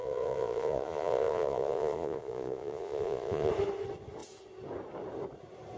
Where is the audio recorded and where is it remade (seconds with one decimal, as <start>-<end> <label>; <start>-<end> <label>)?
0.0-3.5 remade; 3.5-5.8 recorded